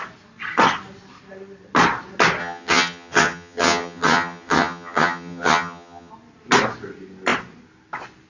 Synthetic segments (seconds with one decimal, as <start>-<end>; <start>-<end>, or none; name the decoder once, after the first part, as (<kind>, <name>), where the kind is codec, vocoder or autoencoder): 2.4-6.1 (vocoder, HiFi-GAN)